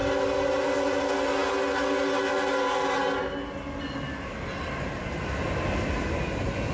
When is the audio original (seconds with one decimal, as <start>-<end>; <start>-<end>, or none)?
0.0-6.7